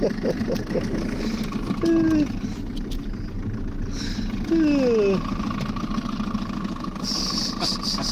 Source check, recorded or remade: recorded